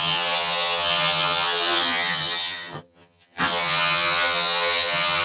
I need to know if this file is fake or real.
fake